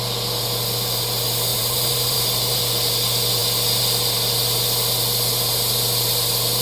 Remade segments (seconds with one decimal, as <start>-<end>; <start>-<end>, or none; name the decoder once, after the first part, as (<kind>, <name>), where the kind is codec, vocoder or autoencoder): 1.5-2.6 (vocoder, BigVGAN v2)